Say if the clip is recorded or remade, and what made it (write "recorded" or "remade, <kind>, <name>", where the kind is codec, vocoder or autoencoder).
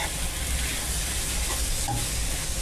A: recorded